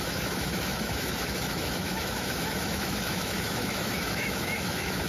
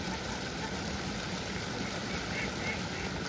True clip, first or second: second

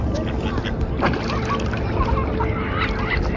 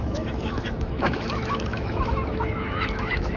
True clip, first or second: first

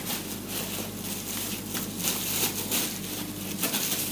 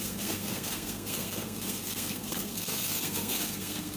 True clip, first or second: first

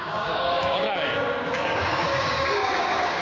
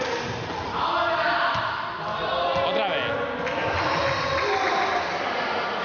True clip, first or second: second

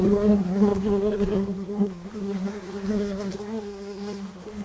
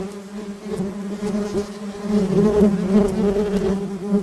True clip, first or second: second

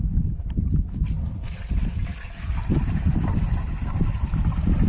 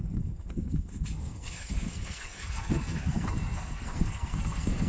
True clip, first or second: first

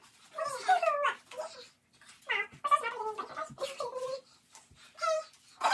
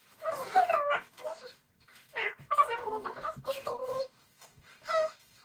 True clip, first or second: first